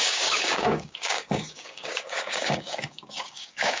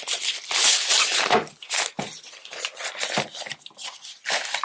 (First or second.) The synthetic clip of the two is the first